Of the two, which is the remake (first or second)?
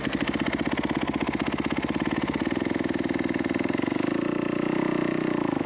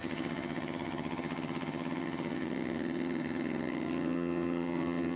second